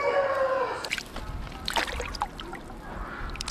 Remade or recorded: remade